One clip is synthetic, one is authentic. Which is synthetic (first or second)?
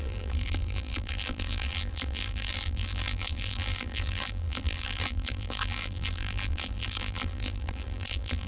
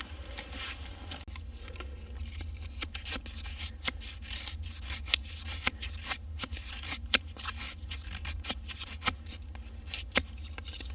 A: first